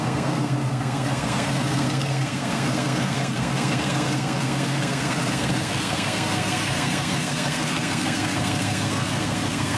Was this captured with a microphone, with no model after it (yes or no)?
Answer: no